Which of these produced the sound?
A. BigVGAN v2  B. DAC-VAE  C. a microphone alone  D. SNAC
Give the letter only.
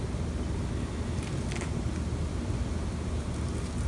C